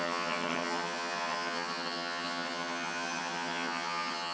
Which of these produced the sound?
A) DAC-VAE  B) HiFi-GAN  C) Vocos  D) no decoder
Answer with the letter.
B